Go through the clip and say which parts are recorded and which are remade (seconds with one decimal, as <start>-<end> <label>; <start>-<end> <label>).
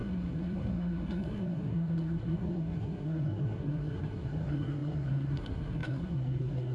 0.0-6.7 remade